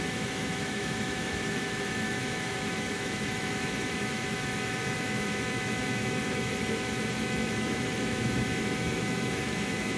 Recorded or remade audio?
remade